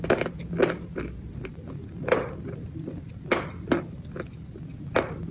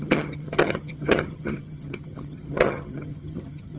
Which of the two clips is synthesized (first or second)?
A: second